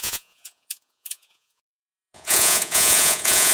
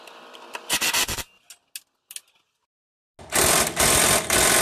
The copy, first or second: first